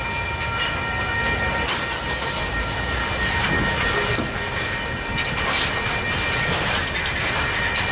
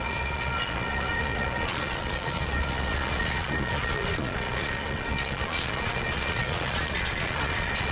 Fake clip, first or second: second